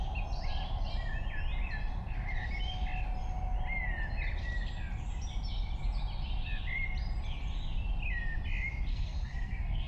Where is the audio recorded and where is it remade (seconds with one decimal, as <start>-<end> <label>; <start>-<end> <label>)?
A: 0.0-8.9 recorded; 8.9-9.9 remade